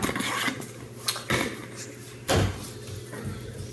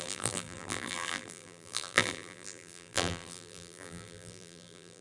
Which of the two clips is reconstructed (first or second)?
second